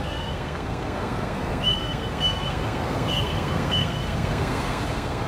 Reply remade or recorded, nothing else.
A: remade